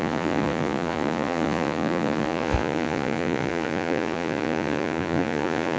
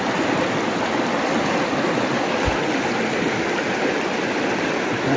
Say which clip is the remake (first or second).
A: first